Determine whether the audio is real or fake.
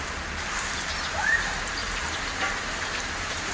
fake